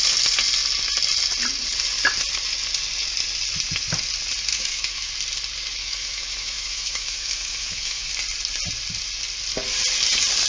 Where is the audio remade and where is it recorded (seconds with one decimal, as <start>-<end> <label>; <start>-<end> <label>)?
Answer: 0.0-4.5 recorded; 4.5-5.1 remade; 5.1-5.8 recorded; 5.8-8.1 remade; 8.1-10.5 recorded